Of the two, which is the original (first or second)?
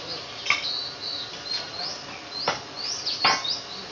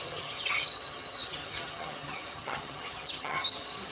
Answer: first